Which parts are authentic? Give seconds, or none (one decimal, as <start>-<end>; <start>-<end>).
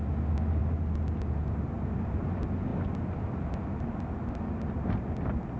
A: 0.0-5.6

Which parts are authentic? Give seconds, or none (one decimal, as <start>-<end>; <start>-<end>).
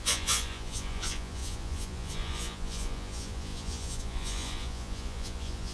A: none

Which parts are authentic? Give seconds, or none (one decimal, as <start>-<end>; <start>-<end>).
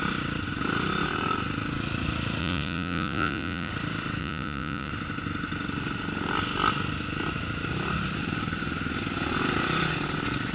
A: 0.0-2.4; 3.7-4.2; 4.9-10.5